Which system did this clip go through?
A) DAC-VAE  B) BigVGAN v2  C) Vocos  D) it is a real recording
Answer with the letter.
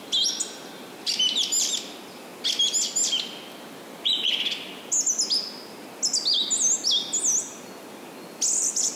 D